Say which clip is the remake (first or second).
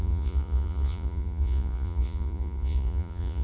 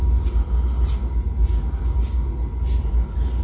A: first